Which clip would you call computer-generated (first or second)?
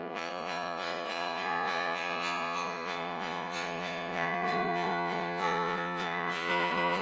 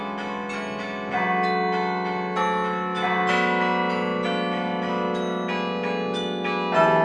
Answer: first